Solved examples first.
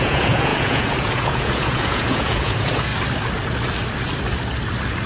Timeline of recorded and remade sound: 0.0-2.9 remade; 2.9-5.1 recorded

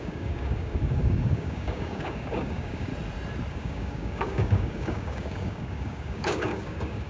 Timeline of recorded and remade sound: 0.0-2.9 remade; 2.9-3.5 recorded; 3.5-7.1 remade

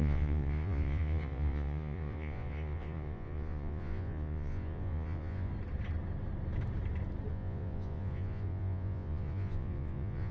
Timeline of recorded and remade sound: 0.0-5.5 remade; 5.5-7.3 recorded; 7.3-10.3 remade